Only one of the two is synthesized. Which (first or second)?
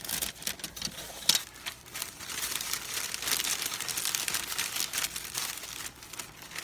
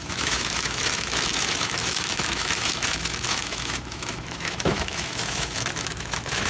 second